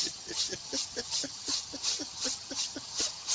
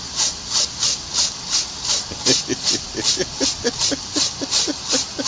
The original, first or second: second